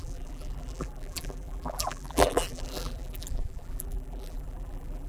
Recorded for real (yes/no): no